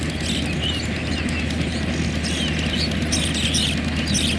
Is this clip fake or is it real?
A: real